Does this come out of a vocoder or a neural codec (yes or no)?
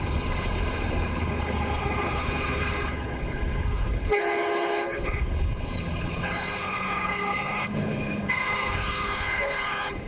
yes